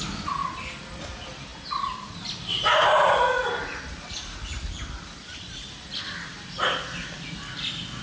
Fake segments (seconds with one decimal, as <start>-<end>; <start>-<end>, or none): none